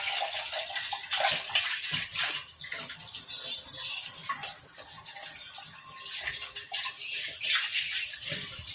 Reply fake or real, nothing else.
real